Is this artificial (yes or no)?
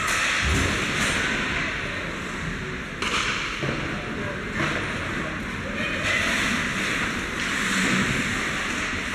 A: no